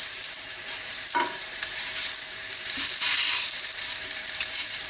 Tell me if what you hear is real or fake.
fake